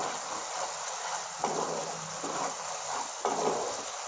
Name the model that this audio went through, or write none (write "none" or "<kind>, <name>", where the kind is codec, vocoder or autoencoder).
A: none